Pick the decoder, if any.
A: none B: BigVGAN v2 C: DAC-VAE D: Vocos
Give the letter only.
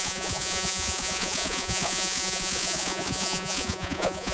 D